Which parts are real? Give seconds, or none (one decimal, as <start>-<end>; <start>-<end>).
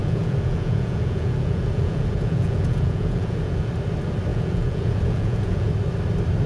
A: 3.7-4.3; 5.7-6.5